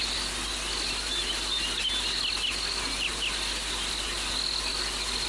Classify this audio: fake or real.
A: real